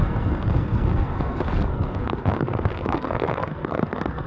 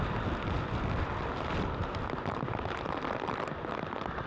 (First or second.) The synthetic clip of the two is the first